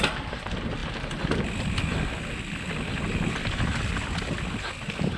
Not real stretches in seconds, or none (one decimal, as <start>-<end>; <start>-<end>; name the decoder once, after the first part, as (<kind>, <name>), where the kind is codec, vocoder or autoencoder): none